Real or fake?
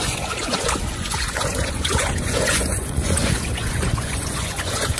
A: fake